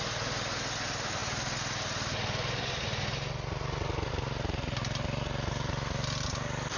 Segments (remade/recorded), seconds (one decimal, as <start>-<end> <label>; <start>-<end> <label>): 0.0-6.8 recorded